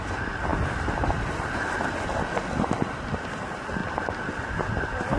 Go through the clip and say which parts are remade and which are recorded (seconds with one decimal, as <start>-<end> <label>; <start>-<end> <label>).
0.0-5.2 recorded